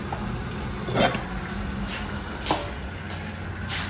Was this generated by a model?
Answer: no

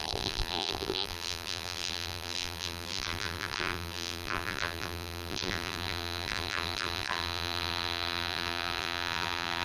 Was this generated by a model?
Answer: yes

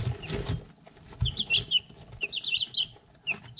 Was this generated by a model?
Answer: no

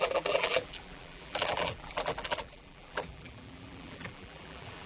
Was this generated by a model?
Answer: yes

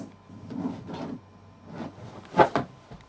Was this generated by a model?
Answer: no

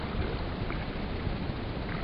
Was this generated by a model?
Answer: no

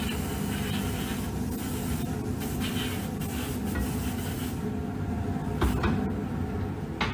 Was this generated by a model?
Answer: no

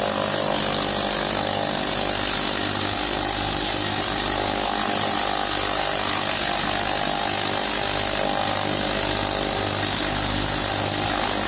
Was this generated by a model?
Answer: no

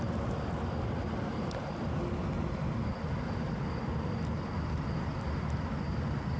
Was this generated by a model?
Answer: no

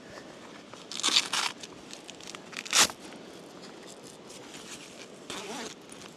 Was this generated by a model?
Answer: no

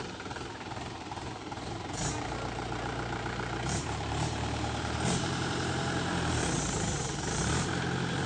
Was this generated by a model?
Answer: yes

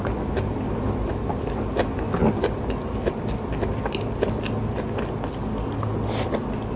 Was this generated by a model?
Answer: no